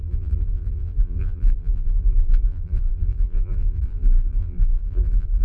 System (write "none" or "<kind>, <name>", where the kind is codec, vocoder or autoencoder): vocoder, BigVGAN v2